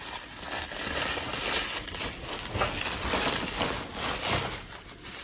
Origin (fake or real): real